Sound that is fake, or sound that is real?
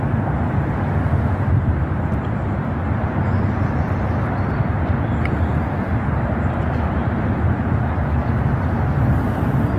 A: real